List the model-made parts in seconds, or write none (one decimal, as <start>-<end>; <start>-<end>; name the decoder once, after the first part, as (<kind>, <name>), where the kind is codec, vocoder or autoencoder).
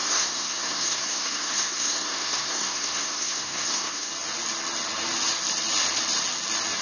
0.0-4.1 (codec, SNAC)